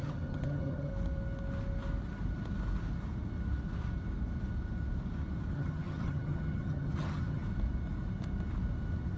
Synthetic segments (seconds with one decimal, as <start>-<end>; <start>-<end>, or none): 0.0-0.9; 5.5-7.4